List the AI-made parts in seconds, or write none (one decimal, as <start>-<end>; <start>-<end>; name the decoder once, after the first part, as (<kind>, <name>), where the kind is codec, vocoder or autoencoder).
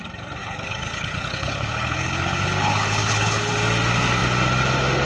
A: 0.4-3.5 (codec, HILCodec)